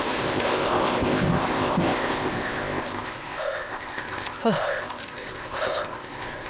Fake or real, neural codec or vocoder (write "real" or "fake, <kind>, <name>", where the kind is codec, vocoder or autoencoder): fake, codec, ZipCodec